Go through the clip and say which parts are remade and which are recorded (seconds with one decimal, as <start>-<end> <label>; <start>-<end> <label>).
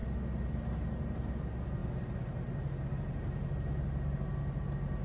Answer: 0.0-5.0 recorded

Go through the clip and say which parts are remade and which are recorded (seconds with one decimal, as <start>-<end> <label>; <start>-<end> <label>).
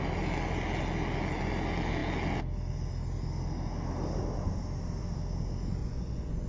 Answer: 0.0-5.8 recorded; 5.8-6.5 remade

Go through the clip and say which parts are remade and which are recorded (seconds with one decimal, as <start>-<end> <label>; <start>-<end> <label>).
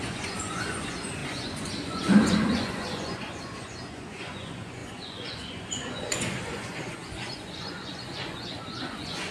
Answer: 0.0-9.3 remade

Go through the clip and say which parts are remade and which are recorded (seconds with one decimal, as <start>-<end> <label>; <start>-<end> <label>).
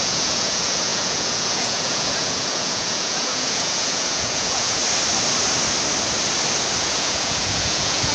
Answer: 0.0-4.8 remade; 4.8-6.8 recorded; 6.8-8.1 remade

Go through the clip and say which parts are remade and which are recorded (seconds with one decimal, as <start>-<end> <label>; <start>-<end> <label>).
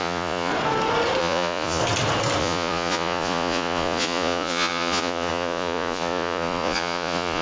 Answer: 0.0-0.5 remade; 0.5-1.2 recorded; 1.2-1.8 remade; 1.8-2.4 recorded; 2.4-7.4 remade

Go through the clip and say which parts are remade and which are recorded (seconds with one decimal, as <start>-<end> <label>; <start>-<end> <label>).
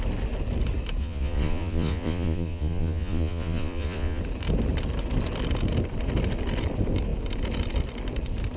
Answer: 0.0-1.0 recorded; 1.0-4.2 remade; 4.2-8.6 recorded